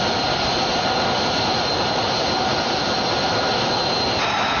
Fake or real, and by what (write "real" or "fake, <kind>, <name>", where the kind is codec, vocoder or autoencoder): real